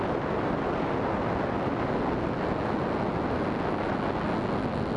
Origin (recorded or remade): recorded